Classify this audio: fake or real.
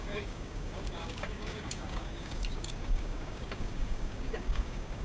fake